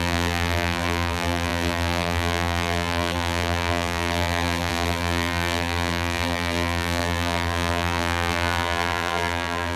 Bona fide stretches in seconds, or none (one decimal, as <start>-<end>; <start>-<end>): none